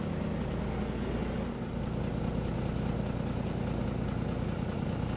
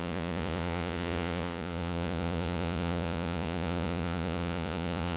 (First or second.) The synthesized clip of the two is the second